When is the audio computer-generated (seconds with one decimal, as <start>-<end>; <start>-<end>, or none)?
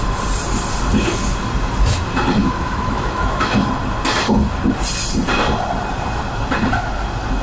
2.4-3.7